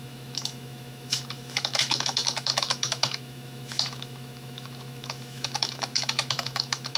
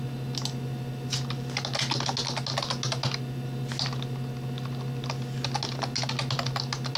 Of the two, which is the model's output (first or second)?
first